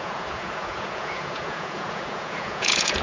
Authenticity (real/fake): fake